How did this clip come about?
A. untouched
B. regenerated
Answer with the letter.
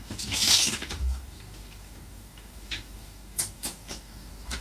B